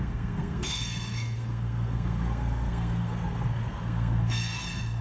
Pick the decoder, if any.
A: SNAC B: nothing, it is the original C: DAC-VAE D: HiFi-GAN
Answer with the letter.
A